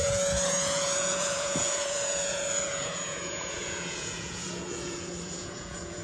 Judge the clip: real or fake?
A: fake